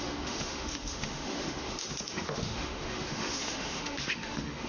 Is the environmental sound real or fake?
fake